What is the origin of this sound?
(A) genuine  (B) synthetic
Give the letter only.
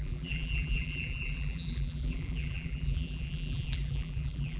B